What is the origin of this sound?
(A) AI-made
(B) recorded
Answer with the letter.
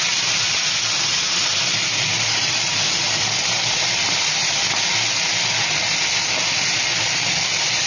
B